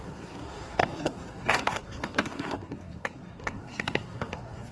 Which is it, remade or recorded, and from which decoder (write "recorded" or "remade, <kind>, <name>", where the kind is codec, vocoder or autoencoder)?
remade, codec, SNAC